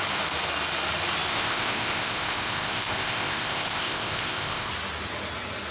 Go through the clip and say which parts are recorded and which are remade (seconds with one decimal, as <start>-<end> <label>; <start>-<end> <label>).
0.0-1.3 recorded; 1.3-4.7 remade; 4.7-5.7 recorded